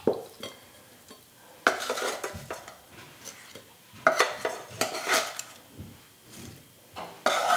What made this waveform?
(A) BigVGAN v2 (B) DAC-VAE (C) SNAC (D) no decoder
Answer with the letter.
D